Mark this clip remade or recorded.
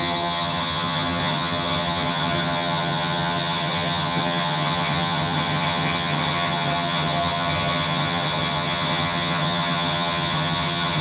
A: remade